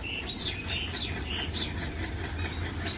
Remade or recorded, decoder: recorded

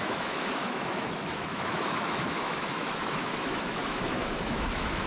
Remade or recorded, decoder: remade, autoencoder, DAC-VAE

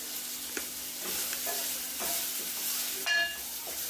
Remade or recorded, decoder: recorded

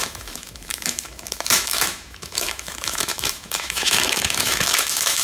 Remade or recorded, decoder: remade, autoencoder, DAC-VAE